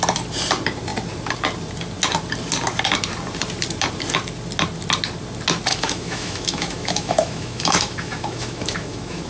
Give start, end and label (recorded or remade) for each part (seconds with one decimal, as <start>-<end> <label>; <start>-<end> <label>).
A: 0.0-5.7 recorded; 5.7-9.3 remade